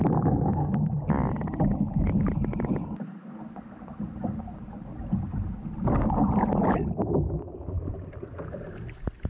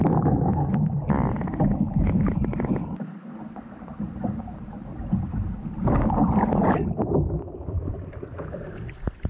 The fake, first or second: second